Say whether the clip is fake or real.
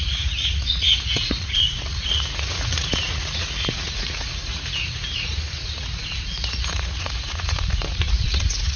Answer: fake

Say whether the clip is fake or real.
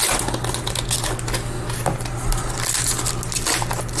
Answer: real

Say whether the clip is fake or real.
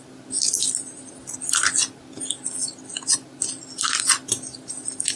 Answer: real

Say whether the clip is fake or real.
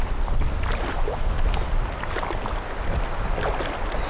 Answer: real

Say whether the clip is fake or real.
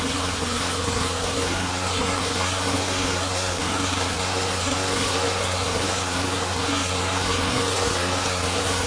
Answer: fake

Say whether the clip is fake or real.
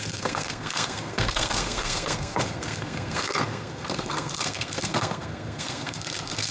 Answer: fake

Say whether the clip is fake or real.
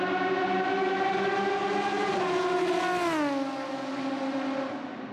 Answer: real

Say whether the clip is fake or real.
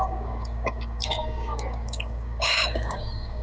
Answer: fake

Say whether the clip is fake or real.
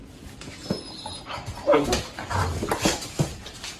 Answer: real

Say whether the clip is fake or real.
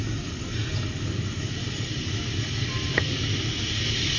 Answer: real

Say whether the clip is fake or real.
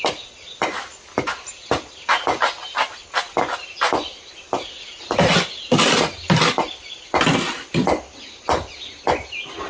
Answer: real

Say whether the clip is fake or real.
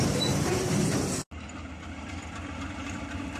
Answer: real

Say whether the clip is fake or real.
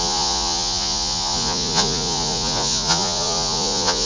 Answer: fake